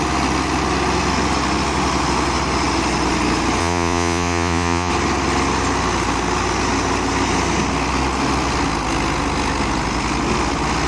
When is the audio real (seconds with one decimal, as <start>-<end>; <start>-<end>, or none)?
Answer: 0.0-3.6; 4.9-10.9